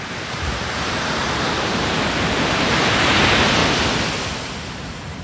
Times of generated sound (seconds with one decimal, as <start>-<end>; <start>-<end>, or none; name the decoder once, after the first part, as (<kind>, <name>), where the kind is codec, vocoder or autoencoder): 0.0-3.6 (vocoder, BigVGAN v2); 4.6-5.2